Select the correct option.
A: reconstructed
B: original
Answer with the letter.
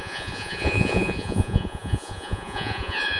A